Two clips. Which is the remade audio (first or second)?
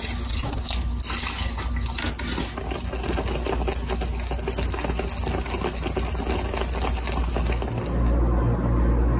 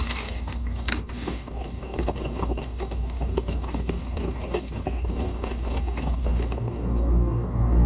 second